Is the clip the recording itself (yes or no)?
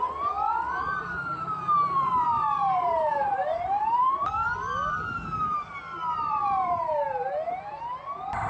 no